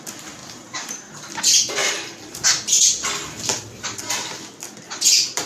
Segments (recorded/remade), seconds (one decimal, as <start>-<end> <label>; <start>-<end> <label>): 0.0-0.4 recorded; 0.4-1.4 remade; 1.4-1.8 recorded; 1.8-4.0 remade; 4.0-5.5 recorded